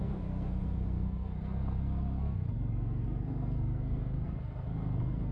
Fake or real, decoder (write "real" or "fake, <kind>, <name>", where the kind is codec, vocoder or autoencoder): fake, codec, SNAC